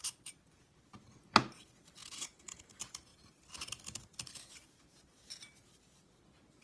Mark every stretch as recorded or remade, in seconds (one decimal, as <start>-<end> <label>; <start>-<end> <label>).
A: 0.0-2.0 recorded; 2.0-2.6 remade; 2.6-6.6 recorded